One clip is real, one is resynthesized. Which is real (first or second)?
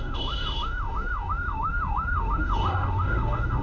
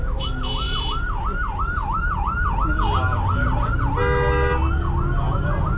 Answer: second